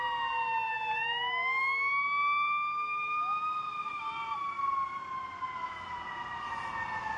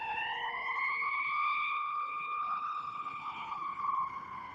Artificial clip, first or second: second